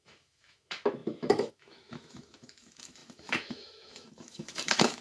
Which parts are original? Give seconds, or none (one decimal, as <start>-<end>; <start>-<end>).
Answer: none